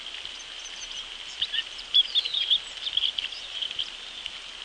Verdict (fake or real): real